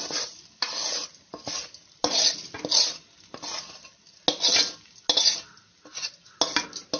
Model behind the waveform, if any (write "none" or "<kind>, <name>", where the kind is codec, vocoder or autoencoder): none